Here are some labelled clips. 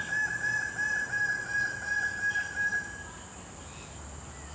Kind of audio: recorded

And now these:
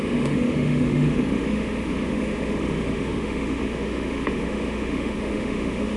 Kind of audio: remade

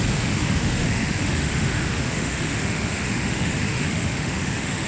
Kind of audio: remade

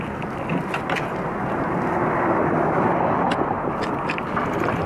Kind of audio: recorded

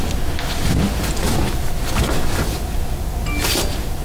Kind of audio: recorded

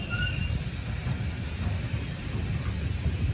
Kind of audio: recorded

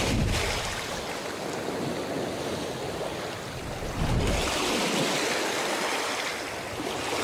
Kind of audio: recorded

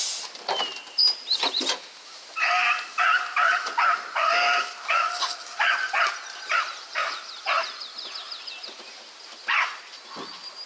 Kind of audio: recorded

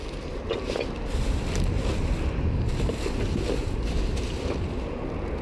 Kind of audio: recorded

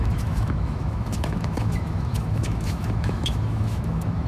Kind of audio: remade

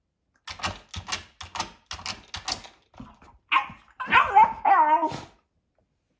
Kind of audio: recorded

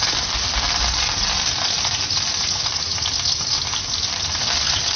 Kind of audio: recorded